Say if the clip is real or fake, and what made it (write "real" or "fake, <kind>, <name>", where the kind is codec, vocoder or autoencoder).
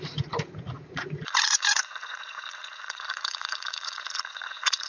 fake, vocoder, Vocos